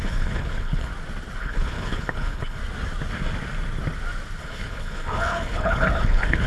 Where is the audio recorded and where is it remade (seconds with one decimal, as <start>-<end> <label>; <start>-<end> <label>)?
0.0-0.9 remade; 0.9-1.4 recorded; 1.4-2.6 remade; 2.6-4.4 recorded; 4.4-6.5 remade